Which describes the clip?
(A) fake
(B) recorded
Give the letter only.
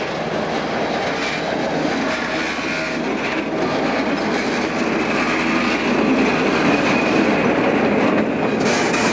B